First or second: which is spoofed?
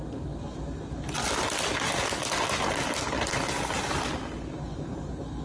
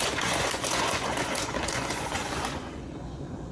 second